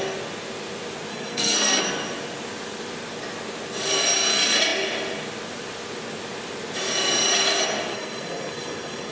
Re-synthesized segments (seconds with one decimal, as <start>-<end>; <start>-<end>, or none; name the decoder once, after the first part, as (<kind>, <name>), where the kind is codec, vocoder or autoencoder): 1.1-1.8 (codec, SNAC); 7.9-9.1